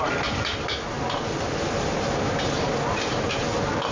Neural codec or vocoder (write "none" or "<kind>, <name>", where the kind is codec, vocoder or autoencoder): none